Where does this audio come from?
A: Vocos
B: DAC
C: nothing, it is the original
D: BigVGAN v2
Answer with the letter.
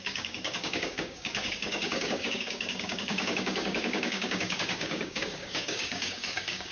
B